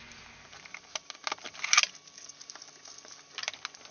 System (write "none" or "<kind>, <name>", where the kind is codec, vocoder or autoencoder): none